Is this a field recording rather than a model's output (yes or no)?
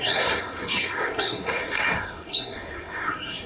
no